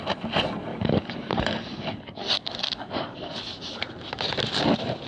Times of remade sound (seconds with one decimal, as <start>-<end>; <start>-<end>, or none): 0.7-3.8